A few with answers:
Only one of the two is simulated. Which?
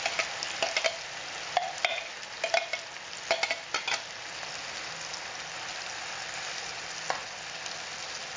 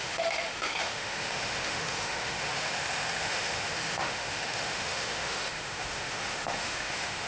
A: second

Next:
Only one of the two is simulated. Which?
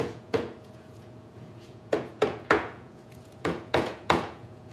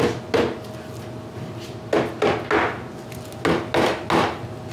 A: first